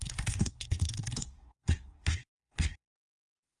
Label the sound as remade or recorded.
remade